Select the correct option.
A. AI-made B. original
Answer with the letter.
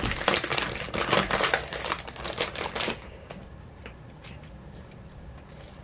B